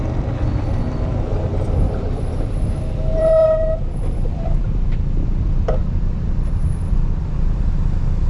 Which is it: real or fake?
fake